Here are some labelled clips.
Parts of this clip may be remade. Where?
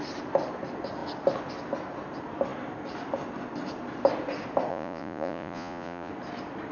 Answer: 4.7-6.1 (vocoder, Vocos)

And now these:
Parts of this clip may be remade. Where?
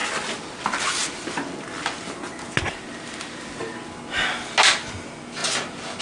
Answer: none